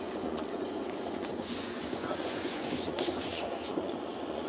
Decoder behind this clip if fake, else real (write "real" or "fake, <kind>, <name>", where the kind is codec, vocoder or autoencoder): fake, vocoder, Vocos